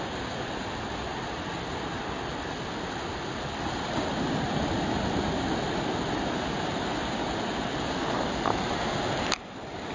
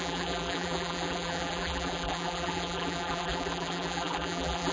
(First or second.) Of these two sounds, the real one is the first